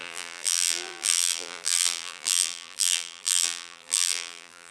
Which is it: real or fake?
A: fake